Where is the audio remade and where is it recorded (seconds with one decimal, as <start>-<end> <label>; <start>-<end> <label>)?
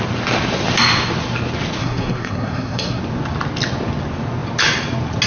0.0-1.8 recorded; 1.8-3.0 remade; 3.0-5.3 recorded